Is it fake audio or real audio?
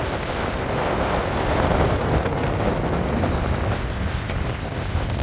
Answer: real